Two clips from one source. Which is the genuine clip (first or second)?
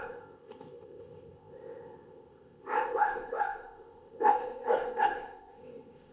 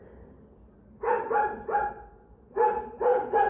second